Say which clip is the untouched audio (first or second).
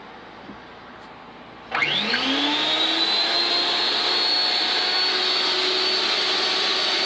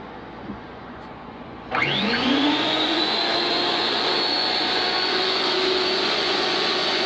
first